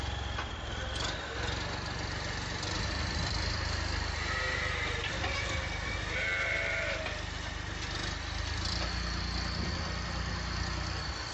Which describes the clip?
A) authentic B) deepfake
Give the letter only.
A